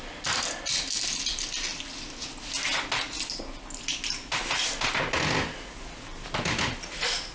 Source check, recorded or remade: recorded